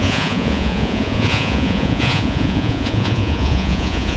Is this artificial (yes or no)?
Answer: yes